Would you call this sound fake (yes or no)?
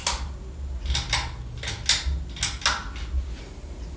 no